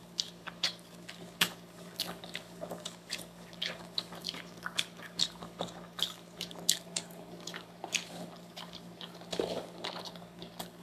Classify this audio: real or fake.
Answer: fake